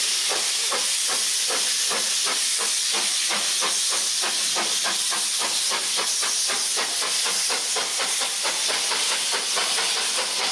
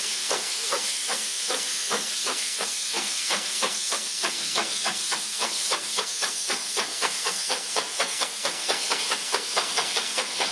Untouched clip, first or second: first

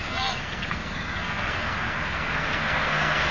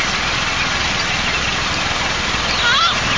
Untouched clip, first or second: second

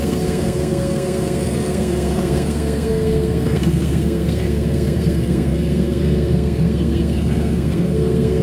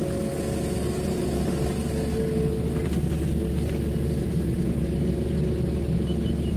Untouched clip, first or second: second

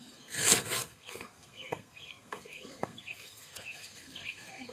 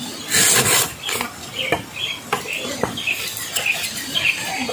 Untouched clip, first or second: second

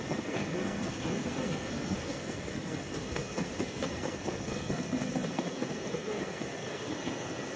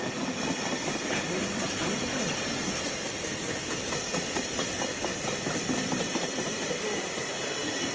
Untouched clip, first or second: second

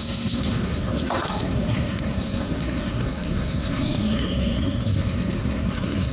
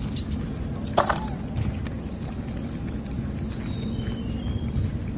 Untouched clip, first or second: second